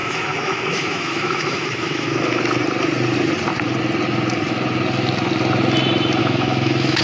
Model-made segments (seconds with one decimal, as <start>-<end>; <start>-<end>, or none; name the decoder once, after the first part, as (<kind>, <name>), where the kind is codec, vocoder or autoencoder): 0.0-2.4 (autoencoder, DAC-VAE); 6.2-7.0